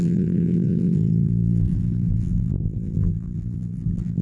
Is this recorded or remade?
remade